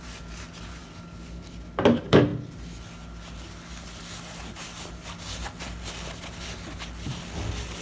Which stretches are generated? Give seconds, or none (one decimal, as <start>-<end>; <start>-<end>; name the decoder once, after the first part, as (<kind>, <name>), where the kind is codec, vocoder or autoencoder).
0.8-1.5 (codec, DAC)